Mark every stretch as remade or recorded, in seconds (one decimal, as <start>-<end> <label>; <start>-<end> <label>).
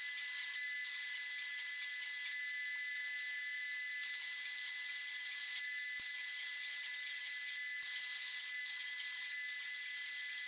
0.0-10.5 recorded